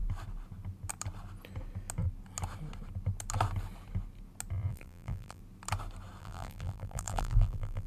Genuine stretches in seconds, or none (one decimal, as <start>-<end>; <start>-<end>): 0.0-4.7; 5.4-6.2